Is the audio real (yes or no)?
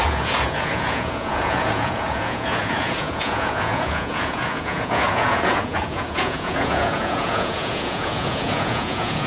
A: no